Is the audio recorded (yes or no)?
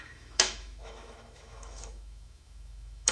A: no